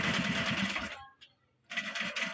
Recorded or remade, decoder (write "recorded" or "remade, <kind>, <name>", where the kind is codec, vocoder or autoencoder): recorded